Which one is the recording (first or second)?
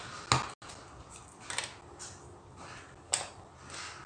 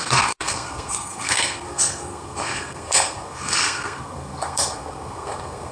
first